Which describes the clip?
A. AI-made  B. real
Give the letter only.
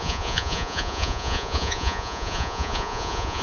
A